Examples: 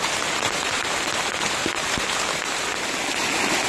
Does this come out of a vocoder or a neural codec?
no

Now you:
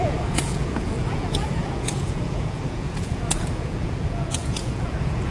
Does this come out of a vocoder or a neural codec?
yes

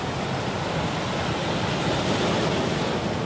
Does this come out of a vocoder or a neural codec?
no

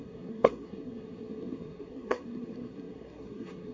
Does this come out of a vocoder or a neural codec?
yes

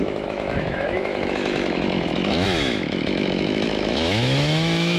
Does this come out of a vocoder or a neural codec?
yes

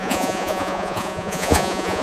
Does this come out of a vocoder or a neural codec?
yes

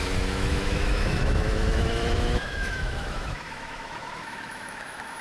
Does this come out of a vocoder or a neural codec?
yes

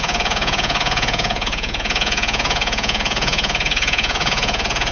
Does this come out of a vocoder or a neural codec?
yes